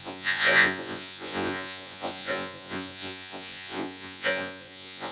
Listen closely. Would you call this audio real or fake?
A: fake